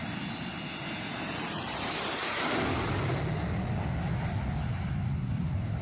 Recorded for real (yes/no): yes